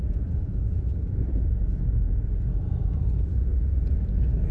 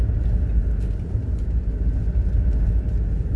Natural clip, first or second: second